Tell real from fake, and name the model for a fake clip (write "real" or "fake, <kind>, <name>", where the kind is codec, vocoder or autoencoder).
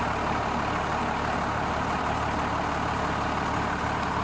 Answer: real